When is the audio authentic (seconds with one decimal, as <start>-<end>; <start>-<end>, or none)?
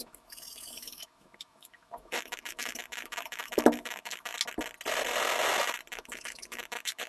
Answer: 4.3-5.9